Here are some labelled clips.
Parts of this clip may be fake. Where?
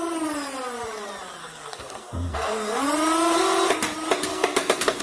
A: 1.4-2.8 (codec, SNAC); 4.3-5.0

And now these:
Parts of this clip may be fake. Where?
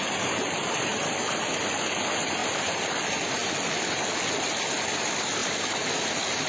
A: 2.4-2.9 (vocoder, BigVGAN v2); 5.4-6.1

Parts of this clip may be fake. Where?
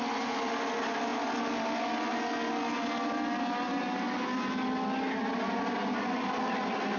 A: none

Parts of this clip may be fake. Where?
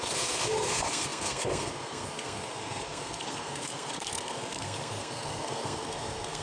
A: 0.0-6.4 (codec, SNAC)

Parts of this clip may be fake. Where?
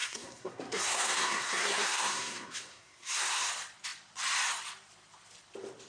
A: 0.0-3.5 (codec, SNAC)